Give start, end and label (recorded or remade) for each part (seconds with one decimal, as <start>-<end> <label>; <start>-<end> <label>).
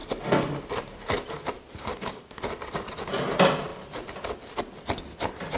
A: 0.0-1.9 recorded; 1.9-2.4 remade; 2.4-5.6 recorded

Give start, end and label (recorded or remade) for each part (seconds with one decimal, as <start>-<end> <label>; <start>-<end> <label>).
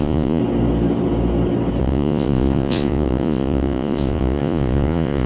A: 0.0-0.4 remade; 0.4-1.8 recorded; 1.8-5.3 remade